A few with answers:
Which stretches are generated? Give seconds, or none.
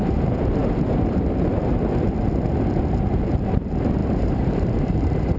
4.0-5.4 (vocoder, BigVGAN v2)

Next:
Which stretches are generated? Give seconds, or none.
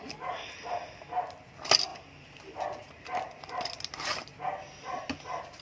none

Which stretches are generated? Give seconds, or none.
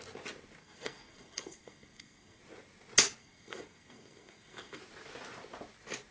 0.6-2.4 (codec, SNAC); 3.2-4.8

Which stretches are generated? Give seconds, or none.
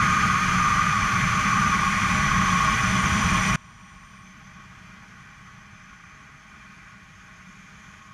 0.7-1.8 (vocoder, BigVGAN v2)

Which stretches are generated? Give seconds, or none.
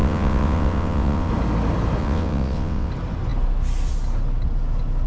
0.0-1.3 (vocoder, WaveNeXt); 2.0-2.9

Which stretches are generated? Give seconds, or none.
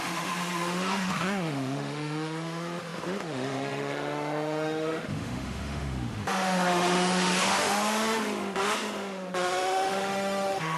0.0-10.8 (autoencoder, DAC-VAE)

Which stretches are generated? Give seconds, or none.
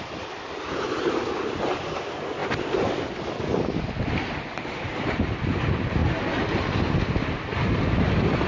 none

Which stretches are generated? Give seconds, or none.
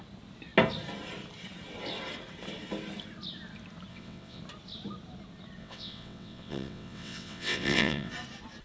3.9-4.4 (vocoder, WaveNeXt); 5.6-8.1